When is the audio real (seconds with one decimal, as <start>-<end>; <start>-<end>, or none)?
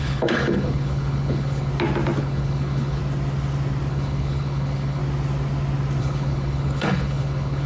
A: 1.7-2.2; 3.0-3.9; 5.0-6.0